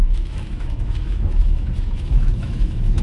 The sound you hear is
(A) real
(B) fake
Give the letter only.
B